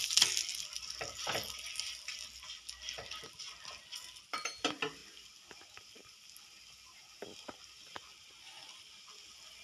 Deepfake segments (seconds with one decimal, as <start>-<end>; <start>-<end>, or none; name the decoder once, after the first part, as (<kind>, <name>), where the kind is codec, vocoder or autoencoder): none